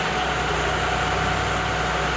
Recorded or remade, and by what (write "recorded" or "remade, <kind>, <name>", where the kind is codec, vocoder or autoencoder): recorded